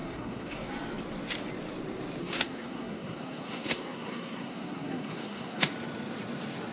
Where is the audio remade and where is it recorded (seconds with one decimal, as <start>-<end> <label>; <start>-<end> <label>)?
0.0-0.7 remade; 0.7-2.2 recorded; 2.2-5.7 remade; 5.7-6.7 recorded